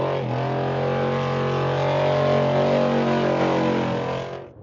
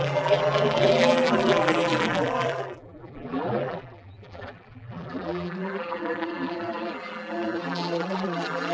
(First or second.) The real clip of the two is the first